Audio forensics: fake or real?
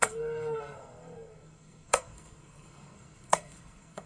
fake